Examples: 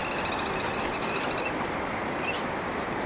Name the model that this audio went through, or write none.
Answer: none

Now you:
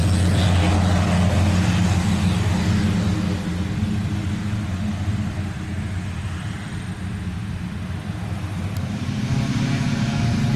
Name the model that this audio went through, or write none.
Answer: none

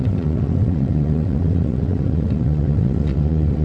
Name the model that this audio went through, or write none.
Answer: vocoder, WaveNeXt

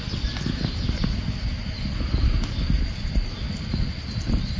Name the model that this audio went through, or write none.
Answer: none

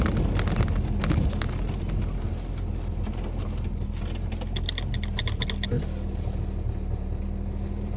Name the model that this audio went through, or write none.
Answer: none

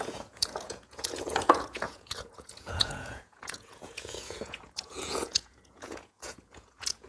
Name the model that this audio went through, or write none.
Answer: vocoder, Vocos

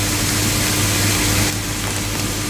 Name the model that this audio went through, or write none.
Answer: none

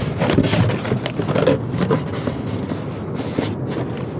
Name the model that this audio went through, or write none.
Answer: none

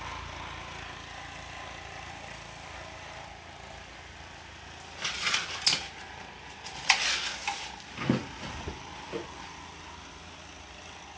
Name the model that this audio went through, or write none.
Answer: none